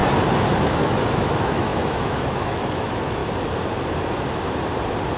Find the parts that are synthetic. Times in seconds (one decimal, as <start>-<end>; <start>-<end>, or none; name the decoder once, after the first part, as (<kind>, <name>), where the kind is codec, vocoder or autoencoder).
0.6-3.2 (autoencoder, DAC-VAE)

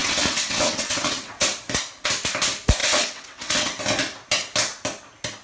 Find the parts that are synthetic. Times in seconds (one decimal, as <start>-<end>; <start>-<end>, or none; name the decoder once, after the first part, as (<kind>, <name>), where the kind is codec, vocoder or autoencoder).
0.0-1.3 (vocoder, WaveNeXt); 2.8-3.8

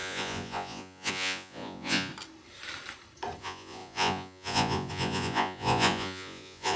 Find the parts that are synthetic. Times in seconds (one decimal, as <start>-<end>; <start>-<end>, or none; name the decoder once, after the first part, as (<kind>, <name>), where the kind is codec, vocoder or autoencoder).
0.0-2.1 (vocoder, Vocos); 3.4-6.8

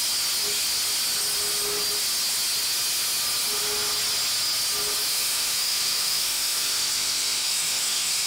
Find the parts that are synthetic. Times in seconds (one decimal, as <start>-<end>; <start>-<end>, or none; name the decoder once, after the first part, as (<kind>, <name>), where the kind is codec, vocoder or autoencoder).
5.1-8.3 (autoencoder, DAC-VAE)

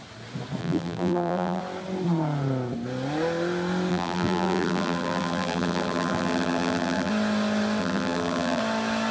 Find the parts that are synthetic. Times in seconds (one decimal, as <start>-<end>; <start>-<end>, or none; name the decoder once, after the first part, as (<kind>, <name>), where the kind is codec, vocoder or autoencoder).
0.6-1.6 (vocoder, BigVGAN v2); 3.9-7.1; 7.8-8.6

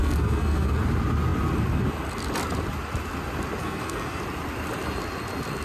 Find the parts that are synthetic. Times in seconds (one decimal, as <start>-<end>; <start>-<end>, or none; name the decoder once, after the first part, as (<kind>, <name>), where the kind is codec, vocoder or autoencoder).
0.0-0.8 (codec, SNAC); 3.6-4.2